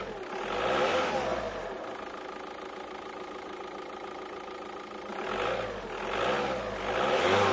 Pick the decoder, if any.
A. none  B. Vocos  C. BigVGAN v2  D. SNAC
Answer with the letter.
A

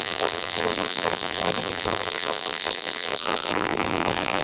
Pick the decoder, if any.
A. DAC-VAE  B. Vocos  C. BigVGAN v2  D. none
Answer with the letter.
C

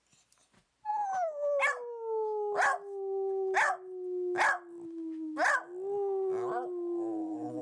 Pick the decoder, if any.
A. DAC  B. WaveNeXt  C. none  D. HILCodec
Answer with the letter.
C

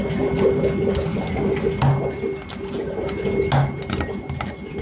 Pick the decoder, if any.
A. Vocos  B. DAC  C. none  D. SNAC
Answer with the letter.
C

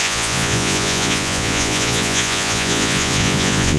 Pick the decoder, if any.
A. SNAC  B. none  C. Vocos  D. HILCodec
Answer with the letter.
C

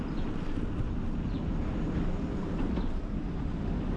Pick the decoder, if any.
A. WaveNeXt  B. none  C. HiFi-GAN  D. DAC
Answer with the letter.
B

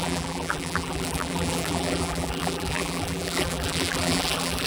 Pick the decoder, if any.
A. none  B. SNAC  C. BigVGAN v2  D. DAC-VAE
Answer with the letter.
C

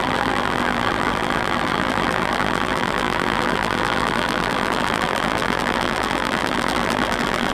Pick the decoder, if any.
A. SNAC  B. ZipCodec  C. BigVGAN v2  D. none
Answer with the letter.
C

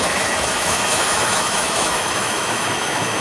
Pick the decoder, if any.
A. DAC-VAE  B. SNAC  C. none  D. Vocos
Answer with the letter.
A